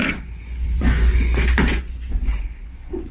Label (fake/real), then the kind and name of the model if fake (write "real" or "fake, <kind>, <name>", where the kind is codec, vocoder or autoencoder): fake, vocoder, Vocos